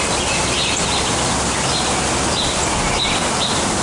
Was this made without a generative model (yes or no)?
yes